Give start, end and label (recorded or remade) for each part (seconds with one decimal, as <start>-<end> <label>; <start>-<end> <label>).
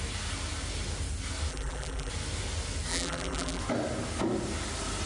0.0-1.5 recorded; 1.5-2.1 remade; 2.1-2.9 recorded; 2.9-3.6 remade; 3.6-5.1 recorded